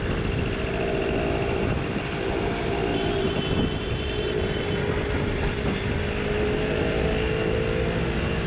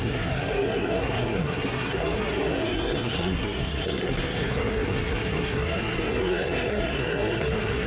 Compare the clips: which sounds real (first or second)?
first